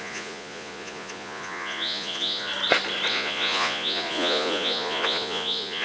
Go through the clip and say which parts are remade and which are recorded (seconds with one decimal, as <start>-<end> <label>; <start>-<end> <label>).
0.0-2.5 remade; 2.5-3.1 recorded; 3.1-5.8 remade